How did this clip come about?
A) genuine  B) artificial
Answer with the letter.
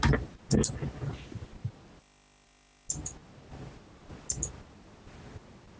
A